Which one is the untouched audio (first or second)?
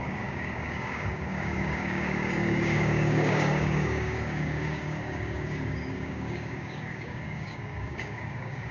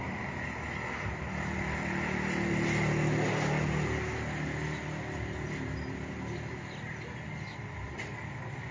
second